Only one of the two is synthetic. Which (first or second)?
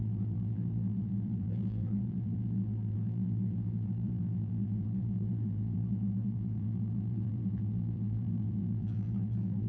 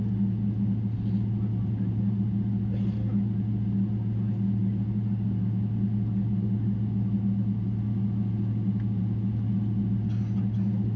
first